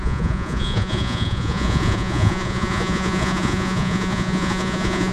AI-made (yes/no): yes